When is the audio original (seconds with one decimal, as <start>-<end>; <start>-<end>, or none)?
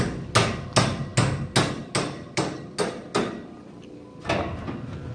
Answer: 0.0-5.1